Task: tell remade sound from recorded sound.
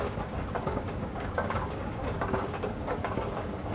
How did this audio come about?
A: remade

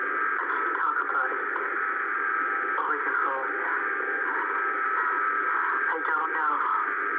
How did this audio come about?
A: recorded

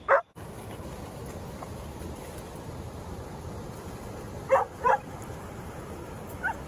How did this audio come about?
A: recorded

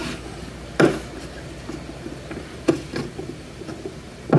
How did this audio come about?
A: recorded